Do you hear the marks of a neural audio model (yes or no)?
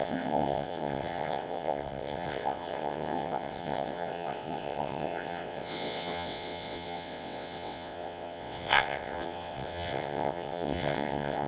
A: yes